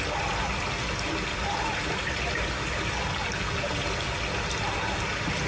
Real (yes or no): yes